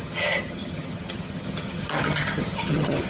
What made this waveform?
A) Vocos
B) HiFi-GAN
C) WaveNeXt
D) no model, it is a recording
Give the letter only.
B